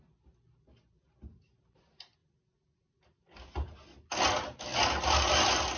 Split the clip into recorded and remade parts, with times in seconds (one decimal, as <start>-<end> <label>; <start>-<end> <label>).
0.0-5.8 recorded